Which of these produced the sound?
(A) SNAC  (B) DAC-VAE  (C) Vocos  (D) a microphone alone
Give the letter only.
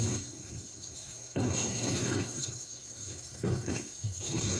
A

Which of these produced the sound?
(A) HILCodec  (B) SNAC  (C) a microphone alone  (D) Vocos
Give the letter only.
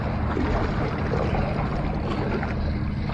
C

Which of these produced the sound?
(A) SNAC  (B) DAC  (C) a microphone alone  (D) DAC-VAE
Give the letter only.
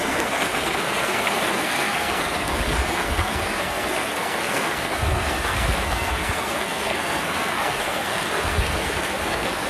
A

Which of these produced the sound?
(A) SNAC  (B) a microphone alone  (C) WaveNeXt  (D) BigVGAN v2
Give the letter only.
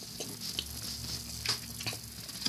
B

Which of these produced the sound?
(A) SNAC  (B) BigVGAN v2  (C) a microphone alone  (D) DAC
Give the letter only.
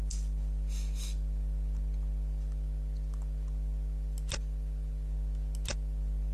C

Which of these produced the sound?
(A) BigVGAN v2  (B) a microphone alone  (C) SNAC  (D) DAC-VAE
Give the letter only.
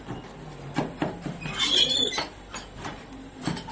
B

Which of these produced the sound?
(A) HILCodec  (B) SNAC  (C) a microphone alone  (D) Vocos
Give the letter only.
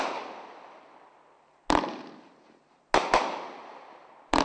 C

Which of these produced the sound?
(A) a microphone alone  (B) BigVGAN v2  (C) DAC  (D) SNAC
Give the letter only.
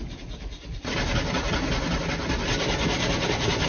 A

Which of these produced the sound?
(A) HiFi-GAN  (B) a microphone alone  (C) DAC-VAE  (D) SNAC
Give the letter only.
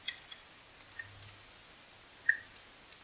B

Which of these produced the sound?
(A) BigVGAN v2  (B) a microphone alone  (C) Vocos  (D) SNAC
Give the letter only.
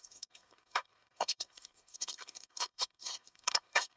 D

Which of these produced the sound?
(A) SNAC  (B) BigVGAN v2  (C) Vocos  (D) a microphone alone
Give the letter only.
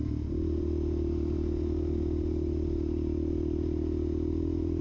D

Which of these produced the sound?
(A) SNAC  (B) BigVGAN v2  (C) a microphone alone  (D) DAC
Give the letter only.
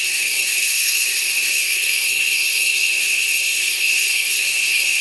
A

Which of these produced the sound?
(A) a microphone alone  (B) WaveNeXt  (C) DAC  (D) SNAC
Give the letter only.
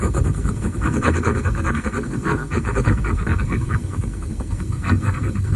D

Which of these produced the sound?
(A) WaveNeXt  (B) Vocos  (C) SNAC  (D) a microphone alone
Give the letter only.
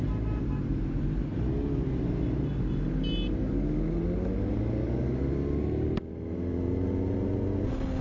D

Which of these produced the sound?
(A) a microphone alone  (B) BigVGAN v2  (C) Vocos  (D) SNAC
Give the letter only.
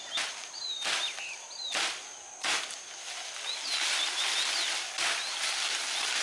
A